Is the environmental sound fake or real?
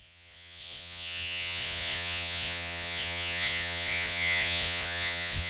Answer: fake